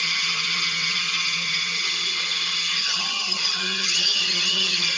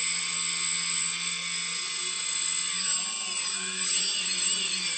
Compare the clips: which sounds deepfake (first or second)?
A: first